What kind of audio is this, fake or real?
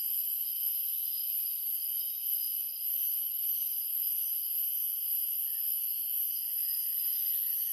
real